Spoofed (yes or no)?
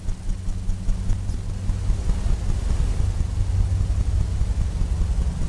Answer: no